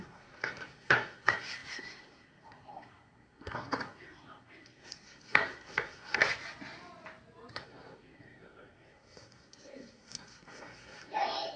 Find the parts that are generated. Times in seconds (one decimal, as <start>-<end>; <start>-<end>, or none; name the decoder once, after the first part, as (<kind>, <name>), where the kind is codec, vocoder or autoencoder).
0.0-6.2 (codec, SNAC); 7.5-11.6